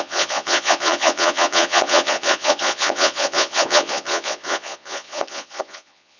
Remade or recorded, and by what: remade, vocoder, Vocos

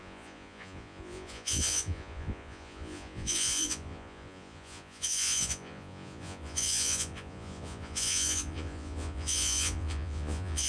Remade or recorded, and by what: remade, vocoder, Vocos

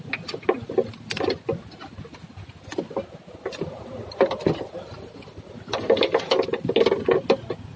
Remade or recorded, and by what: recorded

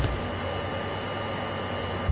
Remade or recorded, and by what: recorded